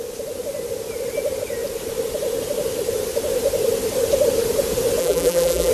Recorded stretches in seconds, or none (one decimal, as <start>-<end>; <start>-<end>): 0.0-5.0